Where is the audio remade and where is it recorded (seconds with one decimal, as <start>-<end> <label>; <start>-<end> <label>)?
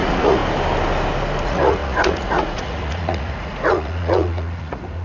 0.0-0.4 remade; 0.4-1.4 recorded; 1.4-5.0 remade